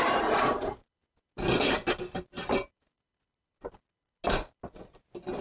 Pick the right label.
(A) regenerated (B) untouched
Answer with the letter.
B